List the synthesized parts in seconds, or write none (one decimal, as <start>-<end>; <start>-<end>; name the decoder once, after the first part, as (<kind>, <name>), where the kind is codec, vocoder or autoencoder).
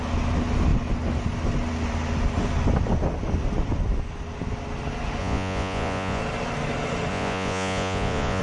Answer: 5.2-6.2 (vocoder, Vocos); 7.1-8.4